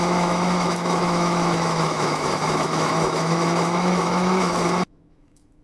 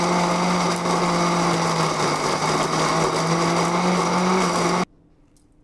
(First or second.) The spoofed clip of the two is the first